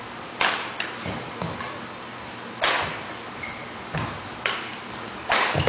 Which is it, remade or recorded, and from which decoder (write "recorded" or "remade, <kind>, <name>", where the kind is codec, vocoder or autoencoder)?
recorded